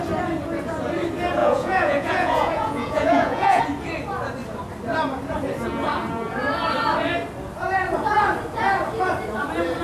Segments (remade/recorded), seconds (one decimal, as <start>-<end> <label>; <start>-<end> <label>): 0.0-1.4 recorded; 1.4-3.6 remade; 3.6-9.8 recorded